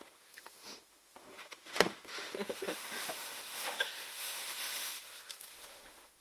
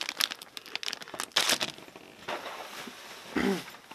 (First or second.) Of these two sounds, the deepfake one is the first